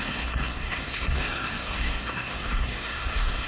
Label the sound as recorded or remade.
remade